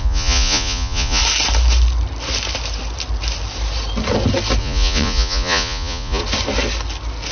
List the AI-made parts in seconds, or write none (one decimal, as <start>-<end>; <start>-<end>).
0.0-1.2; 4.6-6.2